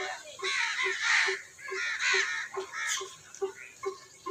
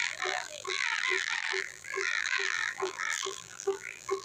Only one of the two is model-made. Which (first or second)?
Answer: second